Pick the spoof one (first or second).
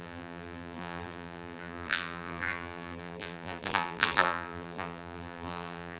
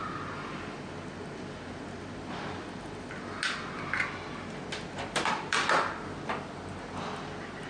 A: first